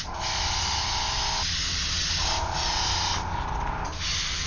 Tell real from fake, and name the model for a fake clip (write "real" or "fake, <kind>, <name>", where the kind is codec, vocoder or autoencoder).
real